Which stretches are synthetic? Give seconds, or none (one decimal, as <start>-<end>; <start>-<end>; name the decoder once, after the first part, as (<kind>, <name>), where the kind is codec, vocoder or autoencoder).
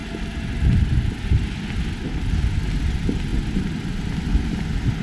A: none